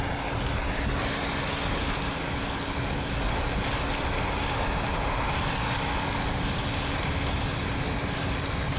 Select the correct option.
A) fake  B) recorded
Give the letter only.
B